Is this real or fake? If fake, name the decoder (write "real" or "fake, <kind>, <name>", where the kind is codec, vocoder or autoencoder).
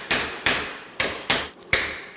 fake, vocoder, BigVGAN v2